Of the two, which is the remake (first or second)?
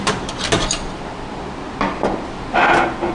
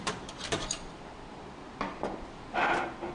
second